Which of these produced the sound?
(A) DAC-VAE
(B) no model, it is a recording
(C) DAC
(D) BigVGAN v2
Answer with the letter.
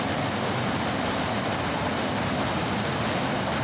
B